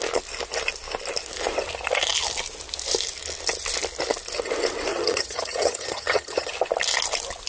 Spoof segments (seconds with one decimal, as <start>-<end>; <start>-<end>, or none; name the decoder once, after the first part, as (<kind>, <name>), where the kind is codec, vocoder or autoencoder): 4.9-6.5 (vocoder, HiFi-GAN)